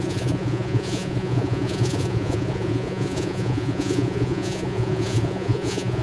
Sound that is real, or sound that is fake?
fake